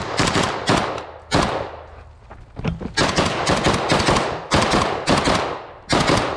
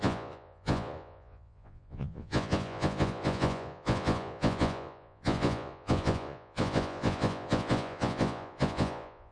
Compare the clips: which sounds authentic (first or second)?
first